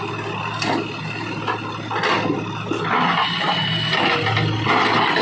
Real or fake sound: real